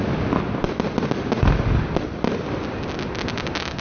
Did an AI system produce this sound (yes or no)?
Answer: no